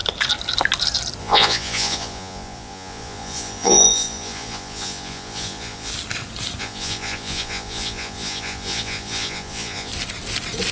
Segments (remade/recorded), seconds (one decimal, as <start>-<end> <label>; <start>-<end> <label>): 0.0-1.2 recorded; 1.2-5.9 remade; 5.9-6.6 recorded; 6.6-9.9 remade; 9.9-10.7 recorded